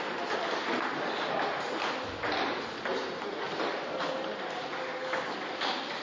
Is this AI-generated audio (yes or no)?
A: no